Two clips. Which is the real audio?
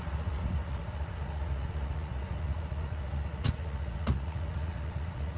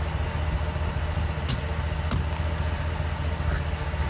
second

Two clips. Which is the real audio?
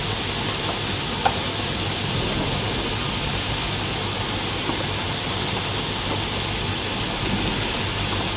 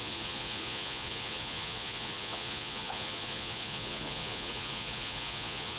first